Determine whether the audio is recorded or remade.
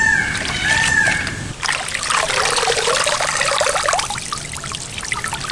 recorded